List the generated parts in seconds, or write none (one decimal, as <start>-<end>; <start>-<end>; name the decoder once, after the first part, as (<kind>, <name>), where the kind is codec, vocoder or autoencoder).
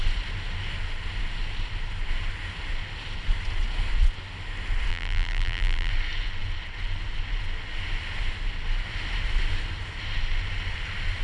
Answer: 4.9-5.9 (vocoder, BigVGAN v2)